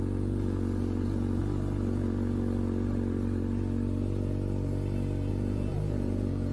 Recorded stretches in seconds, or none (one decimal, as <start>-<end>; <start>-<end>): 1.4-5.3